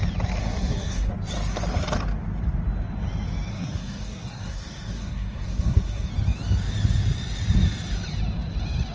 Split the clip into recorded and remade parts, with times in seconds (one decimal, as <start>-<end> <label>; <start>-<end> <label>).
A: 0.0-0.4 recorded; 0.4-1.1 remade; 1.1-3.5 recorded; 3.5-6.1 remade; 6.1-8.9 recorded